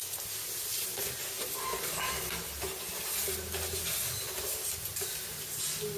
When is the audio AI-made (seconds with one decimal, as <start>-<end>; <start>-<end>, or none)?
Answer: none